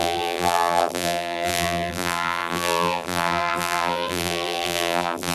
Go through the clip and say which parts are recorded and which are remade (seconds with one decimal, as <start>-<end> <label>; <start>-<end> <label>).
0.0-5.3 remade